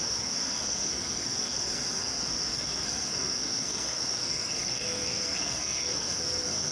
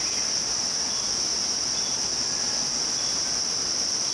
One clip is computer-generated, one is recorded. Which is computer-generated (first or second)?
first